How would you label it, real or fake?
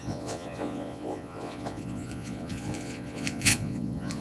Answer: fake